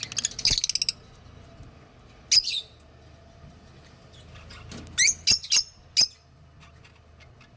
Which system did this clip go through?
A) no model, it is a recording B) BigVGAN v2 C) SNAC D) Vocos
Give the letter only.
A